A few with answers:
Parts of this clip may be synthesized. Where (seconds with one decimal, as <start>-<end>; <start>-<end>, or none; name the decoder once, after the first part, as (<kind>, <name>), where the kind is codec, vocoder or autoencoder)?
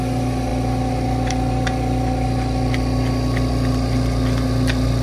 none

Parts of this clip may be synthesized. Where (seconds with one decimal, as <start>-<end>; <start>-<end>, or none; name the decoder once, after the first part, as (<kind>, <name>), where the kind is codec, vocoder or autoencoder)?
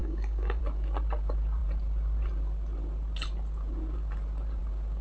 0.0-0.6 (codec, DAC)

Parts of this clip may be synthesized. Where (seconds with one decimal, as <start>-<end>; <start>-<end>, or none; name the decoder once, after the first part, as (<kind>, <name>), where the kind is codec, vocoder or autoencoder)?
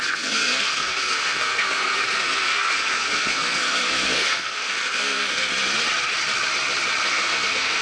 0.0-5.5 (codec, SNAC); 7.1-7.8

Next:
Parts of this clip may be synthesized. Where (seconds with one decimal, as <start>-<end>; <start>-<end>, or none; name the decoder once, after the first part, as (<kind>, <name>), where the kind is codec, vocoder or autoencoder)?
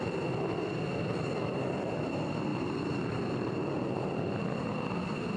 none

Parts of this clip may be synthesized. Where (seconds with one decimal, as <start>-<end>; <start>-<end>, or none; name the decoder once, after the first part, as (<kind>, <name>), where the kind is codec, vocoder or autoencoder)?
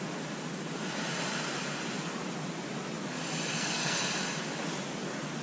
3.5-4.0 (codec, SNAC)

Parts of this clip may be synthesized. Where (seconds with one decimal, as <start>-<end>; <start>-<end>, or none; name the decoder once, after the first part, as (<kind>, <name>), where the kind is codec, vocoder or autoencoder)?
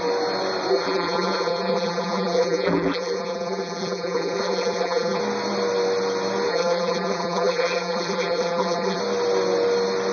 0.7-5.2 (vocoder, BigVGAN v2); 6.5-9.0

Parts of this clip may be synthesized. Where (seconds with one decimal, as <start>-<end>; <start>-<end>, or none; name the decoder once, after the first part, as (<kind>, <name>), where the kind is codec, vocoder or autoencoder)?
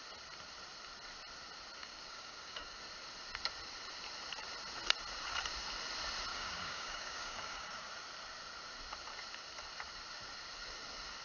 1.8-2.8 (codec, DAC); 6.3-7.9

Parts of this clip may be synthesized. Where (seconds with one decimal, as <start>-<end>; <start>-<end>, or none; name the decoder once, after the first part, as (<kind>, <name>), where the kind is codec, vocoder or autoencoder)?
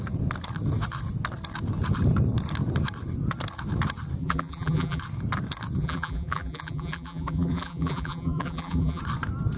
4.2-5.0 (vocoder, BigVGAN v2); 5.8-9.0